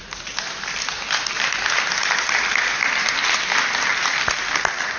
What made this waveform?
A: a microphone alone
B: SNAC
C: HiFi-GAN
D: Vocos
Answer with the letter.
A